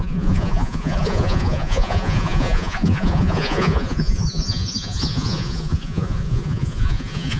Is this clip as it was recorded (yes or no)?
no